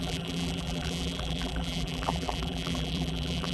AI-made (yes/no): yes